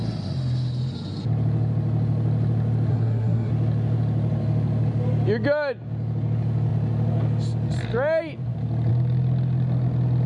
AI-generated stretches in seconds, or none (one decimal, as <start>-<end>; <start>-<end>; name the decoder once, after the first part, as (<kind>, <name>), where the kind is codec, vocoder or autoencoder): 2.9-3.5 (codec, SNAC)